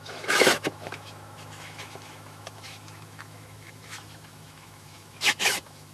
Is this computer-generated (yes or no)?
yes